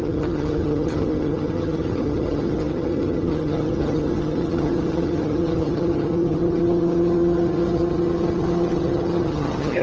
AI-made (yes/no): yes